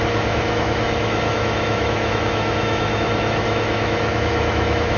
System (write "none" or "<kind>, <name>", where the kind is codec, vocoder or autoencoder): autoencoder, DAC-VAE